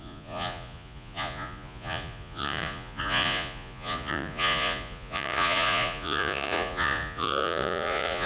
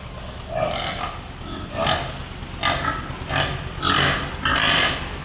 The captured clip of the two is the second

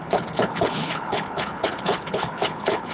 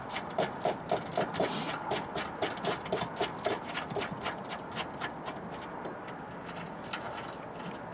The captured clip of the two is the second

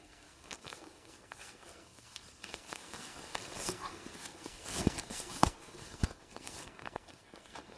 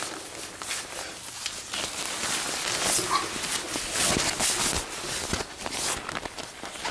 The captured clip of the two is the second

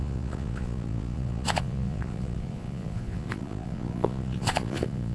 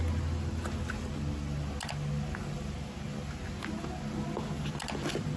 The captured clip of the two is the second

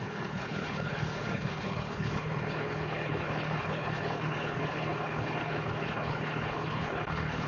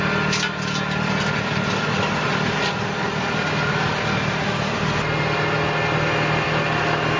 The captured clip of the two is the second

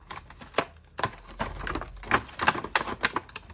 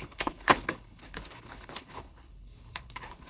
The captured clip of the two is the first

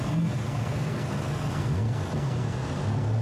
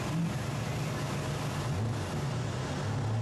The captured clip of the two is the second